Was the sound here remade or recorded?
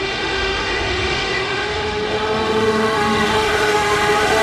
remade